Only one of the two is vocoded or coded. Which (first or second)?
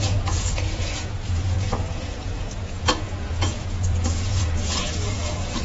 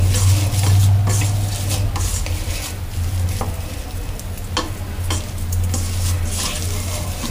first